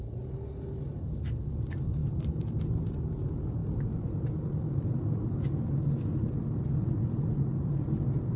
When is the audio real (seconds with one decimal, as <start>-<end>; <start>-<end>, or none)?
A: 0.0-8.4